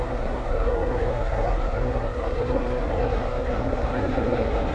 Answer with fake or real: fake